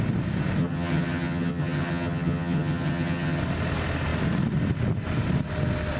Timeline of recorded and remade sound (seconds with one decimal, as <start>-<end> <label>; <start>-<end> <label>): 0.0-0.6 recorded; 0.6-3.4 remade; 3.4-6.0 recorded